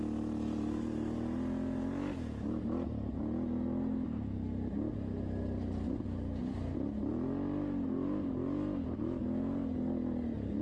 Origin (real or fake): real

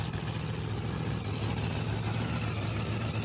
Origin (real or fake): real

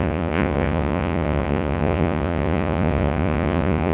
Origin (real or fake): fake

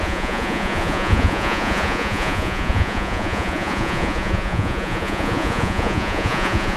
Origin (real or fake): fake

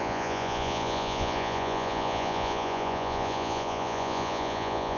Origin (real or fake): fake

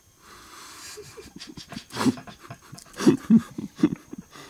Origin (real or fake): real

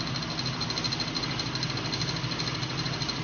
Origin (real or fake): real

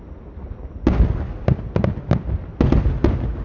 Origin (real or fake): real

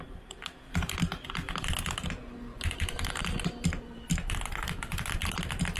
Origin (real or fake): real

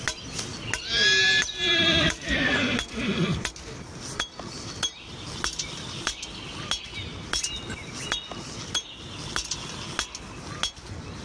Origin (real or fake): real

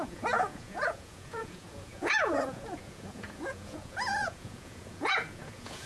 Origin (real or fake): fake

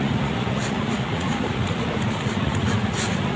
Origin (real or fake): fake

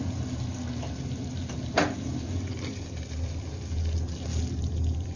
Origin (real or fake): real